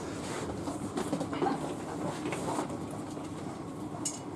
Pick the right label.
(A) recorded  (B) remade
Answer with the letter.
A